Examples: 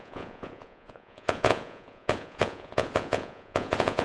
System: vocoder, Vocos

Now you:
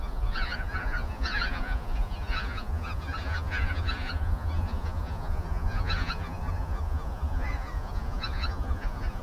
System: vocoder, Vocos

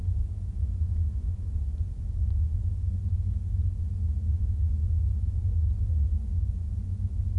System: vocoder, Vocos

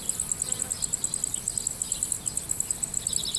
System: none